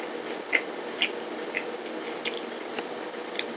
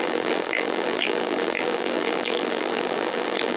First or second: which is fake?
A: second